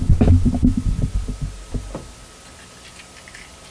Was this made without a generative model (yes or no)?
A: yes